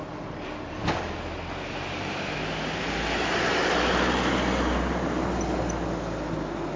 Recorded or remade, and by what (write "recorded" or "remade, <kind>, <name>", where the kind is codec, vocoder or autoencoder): recorded